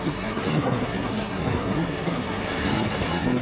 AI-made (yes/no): yes